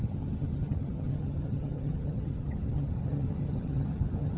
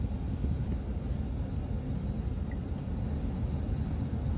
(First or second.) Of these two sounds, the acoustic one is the second